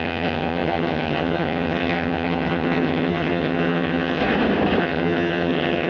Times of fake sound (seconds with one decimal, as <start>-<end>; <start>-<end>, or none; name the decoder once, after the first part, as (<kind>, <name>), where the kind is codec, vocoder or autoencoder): 0.0-4.2 (vocoder, HiFi-GAN); 4.8-5.9